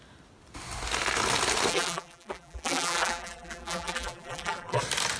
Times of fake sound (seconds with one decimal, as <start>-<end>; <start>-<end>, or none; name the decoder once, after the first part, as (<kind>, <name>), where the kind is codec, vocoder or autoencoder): 1.7-4.8 (vocoder, BigVGAN v2)